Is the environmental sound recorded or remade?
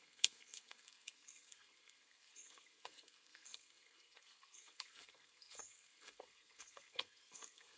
remade